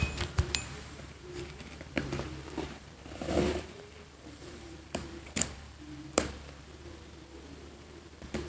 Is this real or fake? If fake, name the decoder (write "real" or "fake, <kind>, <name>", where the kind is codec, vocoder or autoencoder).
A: fake, vocoder, BigVGAN v2